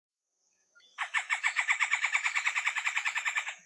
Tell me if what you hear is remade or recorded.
remade